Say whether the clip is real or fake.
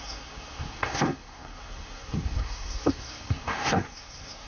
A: fake